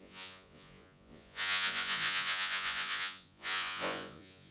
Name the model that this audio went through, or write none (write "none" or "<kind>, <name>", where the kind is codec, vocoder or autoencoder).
vocoder, Vocos